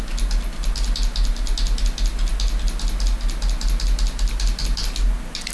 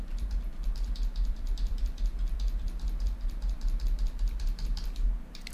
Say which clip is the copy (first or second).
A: second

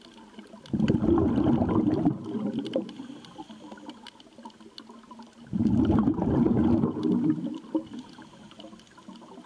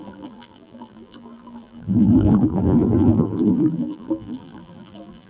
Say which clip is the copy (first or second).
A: second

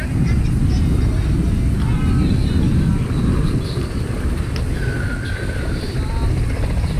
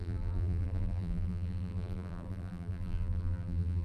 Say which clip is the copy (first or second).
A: second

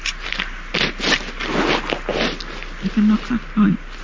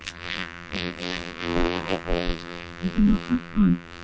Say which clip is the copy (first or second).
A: second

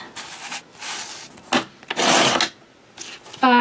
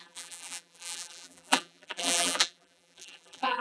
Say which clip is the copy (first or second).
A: second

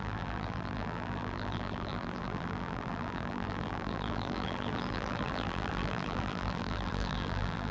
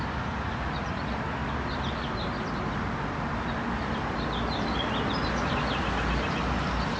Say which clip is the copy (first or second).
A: first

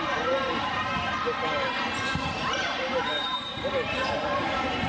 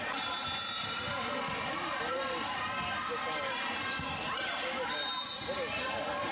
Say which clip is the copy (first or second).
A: first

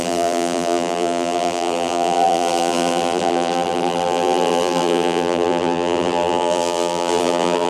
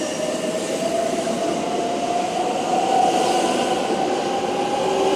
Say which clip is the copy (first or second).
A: first